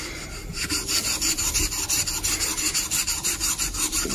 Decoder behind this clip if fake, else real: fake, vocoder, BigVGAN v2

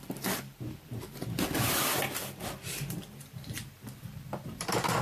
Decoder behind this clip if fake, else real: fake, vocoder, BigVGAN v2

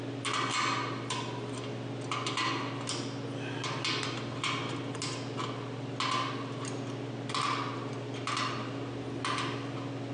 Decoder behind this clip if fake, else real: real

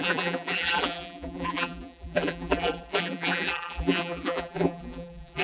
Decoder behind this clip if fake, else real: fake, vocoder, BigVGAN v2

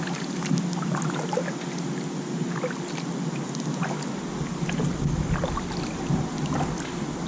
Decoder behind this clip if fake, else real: real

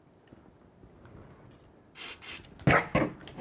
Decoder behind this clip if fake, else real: real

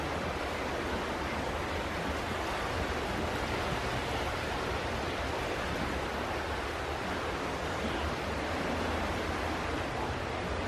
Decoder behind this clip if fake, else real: real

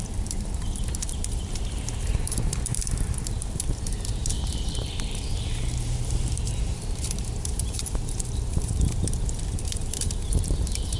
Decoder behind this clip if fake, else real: fake, vocoder, BigVGAN v2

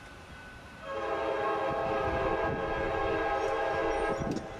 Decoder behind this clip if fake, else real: real